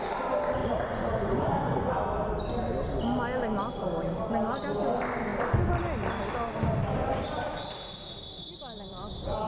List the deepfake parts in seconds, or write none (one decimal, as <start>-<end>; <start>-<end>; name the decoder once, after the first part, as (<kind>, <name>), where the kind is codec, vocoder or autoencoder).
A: 0.6-1.9 (vocoder, Vocos)